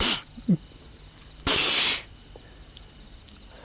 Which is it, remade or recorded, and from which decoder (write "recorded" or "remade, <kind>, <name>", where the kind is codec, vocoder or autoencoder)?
recorded